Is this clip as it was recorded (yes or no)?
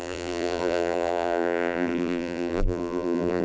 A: no